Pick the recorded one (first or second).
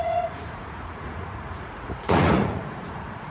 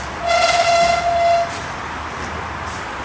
second